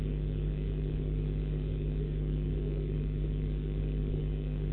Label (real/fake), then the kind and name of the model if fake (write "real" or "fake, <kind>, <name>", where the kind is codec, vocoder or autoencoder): fake, codec, DAC